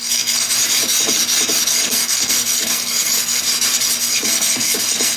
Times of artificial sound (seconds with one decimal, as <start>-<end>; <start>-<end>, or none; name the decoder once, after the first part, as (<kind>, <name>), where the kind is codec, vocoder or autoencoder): 0.0-0.5 (codec, SNAC); 1.7-3.4; 4.0-5.2